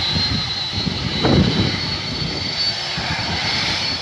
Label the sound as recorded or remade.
recorded